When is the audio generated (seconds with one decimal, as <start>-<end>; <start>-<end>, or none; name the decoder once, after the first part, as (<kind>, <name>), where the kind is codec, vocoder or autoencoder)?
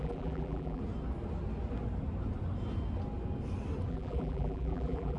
0.0-0.8 (vocoder, BigVGAN v2); 3.9-5.2